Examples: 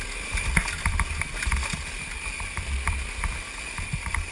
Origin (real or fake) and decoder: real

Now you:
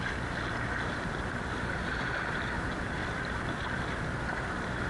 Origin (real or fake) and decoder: real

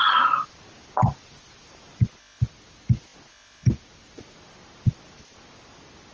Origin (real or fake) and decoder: real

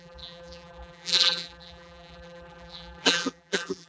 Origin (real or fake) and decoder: fake, vocoder, BigVGAN v2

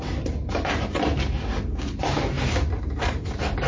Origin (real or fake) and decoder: real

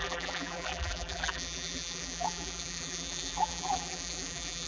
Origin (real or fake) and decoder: fake, vocoder, BigVGAN v2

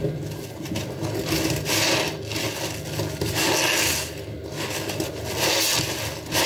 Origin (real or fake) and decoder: real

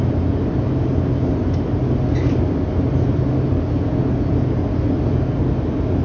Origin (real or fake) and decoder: real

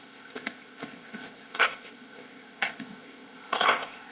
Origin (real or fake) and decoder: fake, codec, ZipCodec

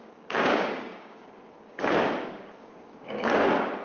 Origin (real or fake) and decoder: fake, codec, DAC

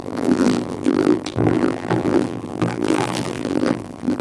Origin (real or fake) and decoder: fake, vocoder, BigVGAN v2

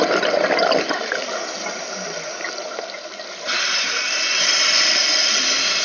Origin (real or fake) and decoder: real